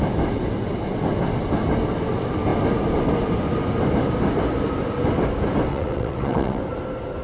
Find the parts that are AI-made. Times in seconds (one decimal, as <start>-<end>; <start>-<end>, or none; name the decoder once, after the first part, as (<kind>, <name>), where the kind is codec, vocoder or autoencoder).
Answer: 5.7-6.6 (vocoder, WaveNeXt)